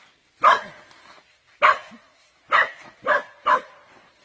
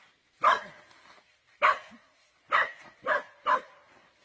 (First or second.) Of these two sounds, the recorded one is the first